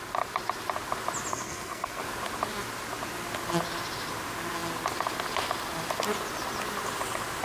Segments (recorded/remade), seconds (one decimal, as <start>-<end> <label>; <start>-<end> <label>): 0.0-1.3 recorded; 1.3-2.0 remade; 2.0-7.4 recorded